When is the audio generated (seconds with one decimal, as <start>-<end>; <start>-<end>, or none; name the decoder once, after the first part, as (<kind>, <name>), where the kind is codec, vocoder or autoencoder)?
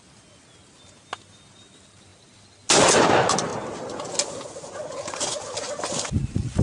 none